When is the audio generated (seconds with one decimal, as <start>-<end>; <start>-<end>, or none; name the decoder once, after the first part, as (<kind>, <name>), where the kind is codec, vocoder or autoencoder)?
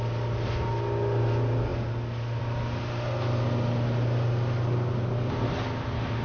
none